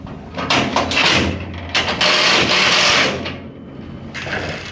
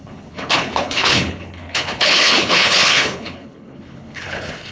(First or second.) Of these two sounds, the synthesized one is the second